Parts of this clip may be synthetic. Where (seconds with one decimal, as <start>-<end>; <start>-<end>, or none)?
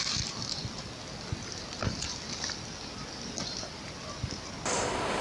none